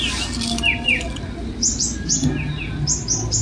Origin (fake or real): real